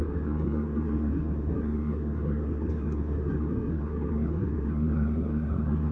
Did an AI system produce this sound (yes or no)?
yes